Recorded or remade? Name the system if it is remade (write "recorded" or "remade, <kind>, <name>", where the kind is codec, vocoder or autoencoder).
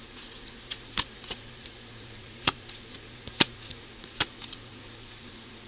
remade, vocoder, Vocos